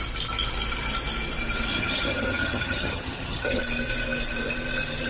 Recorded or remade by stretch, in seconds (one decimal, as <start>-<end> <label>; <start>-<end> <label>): 0.0-1.7 recorded; 1.7-3.6 remade; 3.6-5.1 recorded